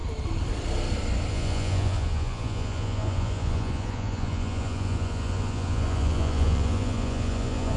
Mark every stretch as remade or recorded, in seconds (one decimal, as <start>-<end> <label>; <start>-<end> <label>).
0.0-1.3 recorded; 1.3-7.8 remade